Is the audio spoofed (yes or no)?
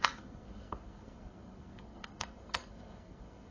yes